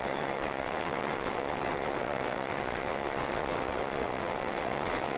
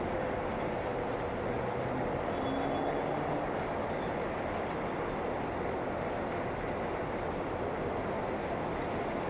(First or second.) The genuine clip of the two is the second